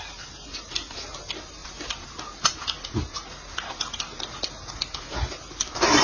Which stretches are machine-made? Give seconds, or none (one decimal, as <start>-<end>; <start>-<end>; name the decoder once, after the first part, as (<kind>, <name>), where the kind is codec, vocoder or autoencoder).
none